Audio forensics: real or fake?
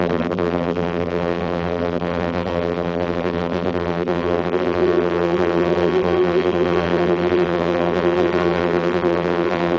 fake